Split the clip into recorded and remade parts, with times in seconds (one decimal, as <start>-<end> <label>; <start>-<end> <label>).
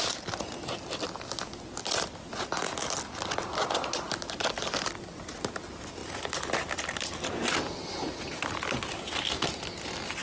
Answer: 0.0-10.2 recorded